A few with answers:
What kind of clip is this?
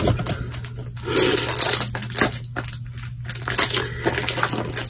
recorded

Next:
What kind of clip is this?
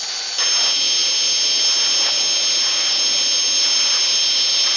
recorded